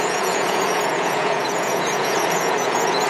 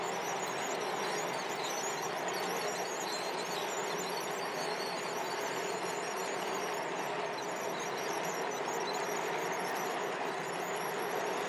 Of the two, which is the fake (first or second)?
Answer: first